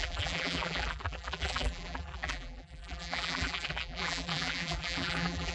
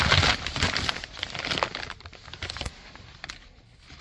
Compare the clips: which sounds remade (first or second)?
first